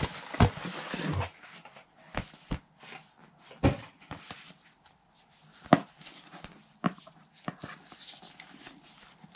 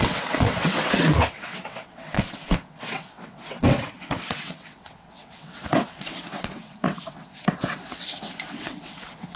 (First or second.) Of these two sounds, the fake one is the second